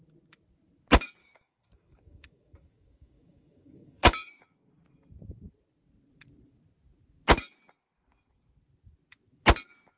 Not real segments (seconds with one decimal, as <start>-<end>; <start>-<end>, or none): 1.2-4.4